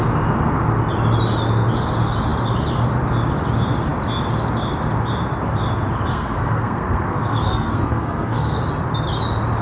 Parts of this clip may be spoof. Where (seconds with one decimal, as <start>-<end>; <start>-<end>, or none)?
6.1-8.6